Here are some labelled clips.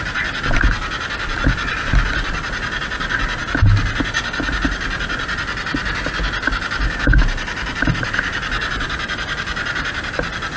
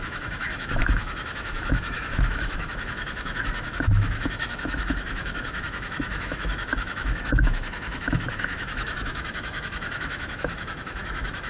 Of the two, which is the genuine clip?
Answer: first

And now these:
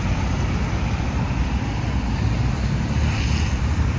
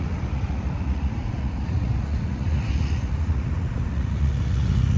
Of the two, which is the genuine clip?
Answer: first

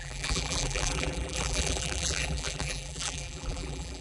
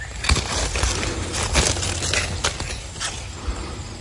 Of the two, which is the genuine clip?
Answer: second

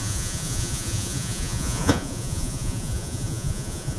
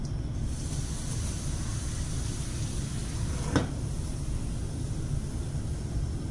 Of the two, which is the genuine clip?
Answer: second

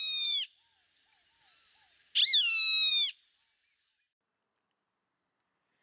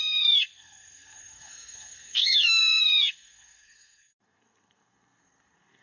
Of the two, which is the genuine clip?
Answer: first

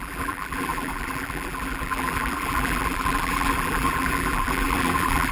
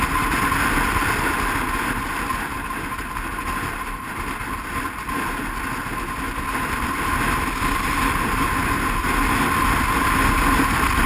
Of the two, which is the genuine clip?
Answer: second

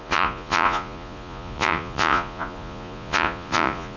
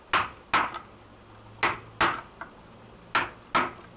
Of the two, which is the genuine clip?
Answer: second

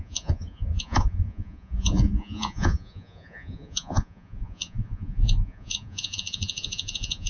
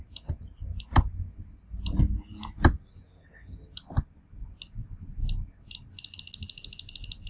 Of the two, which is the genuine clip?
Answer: second